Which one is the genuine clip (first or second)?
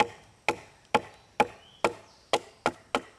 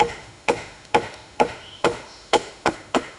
first